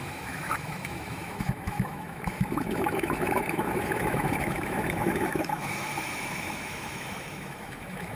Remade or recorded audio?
remade